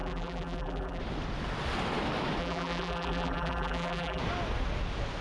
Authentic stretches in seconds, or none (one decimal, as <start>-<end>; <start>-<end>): 1.0-2.4; 4.2-5.2